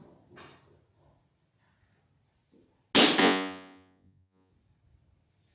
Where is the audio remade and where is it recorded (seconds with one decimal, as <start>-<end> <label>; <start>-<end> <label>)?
0.0-3.2 recorded; 3.2-4.5 remade; 4.5-5.5 recorded